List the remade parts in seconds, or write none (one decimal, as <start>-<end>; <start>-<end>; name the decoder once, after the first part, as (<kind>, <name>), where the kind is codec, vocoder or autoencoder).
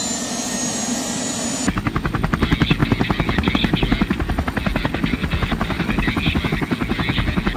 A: none